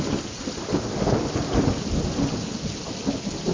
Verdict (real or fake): real